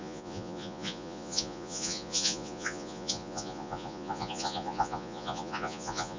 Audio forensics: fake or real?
fake